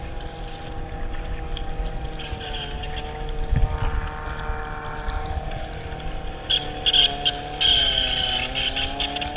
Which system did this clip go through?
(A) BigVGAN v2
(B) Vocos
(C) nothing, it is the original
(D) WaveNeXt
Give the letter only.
C